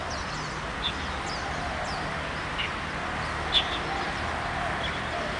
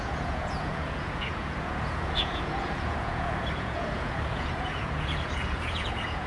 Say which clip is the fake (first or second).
second